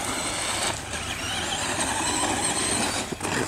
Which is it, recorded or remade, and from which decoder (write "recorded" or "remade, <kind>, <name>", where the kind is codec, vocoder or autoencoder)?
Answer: recorded